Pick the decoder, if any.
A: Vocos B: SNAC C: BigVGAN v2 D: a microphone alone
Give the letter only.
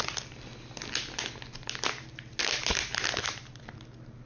D